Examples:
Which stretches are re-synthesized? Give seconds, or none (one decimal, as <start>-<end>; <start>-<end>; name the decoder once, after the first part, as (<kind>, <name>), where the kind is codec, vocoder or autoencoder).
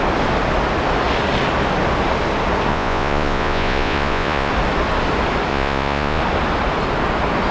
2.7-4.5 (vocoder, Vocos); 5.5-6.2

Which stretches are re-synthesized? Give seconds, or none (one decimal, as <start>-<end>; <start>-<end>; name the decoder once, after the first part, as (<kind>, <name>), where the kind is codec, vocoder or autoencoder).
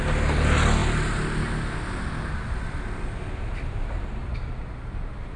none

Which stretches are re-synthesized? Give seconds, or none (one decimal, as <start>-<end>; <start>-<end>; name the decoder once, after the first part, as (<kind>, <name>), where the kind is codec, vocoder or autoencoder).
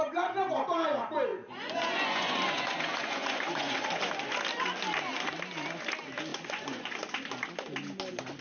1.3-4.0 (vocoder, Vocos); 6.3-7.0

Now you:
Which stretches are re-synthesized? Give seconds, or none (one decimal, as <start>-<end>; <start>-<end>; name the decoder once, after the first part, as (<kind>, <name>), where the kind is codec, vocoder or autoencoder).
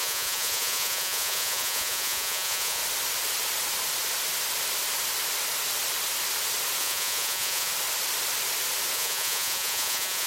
0.0-2.8 (vocoder, Vocos); 6.8-7.7; 8.9-10.3